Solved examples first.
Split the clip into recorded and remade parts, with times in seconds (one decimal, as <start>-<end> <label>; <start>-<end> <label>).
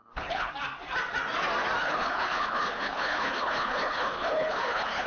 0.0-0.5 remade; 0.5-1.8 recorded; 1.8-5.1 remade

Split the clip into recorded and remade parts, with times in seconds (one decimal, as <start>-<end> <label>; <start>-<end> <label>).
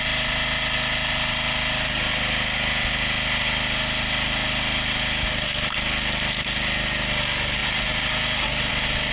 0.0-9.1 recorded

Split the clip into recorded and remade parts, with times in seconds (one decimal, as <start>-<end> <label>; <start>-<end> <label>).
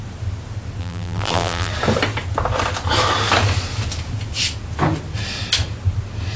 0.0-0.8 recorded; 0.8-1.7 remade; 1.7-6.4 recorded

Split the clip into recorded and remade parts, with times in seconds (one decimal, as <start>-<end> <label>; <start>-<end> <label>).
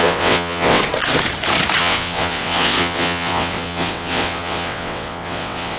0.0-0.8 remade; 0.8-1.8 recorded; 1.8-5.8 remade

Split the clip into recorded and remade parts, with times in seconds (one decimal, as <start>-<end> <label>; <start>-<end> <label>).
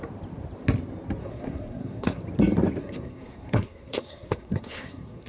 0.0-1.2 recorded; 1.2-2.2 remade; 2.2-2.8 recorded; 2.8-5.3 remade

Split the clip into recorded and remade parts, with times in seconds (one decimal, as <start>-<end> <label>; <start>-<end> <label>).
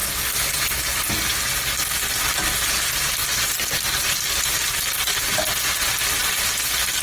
0.0-7.0 recorded